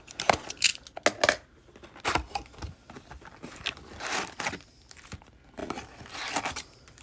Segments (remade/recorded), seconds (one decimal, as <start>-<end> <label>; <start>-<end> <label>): 0.0-0.7 remade; 0.7-4.9 recorded; 4.9-5.6 remade; 5.6-7.0 recorded